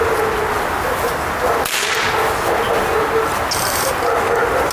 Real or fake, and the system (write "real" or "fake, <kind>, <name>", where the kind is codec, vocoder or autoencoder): real